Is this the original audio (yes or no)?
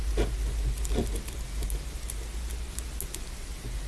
yes